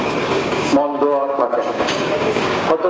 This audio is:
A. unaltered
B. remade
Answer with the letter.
B